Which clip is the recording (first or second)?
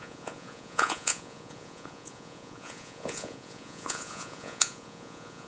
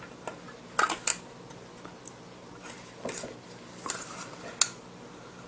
second